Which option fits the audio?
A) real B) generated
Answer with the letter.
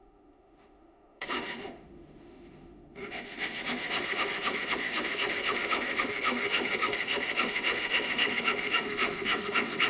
B